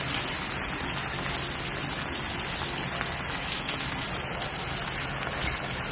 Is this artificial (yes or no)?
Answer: no